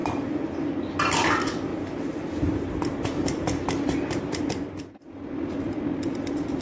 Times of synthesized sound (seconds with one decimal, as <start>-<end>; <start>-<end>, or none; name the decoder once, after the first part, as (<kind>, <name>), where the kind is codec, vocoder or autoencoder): 0.0-0.5 (vocoder, BigVGAN v2); 1.7-4.4